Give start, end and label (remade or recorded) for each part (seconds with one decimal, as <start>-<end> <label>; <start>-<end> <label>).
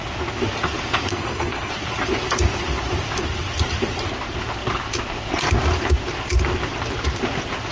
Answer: 0.0-1.1 recorded; 1.1-1.7 remade; 1.7-7.7 recorded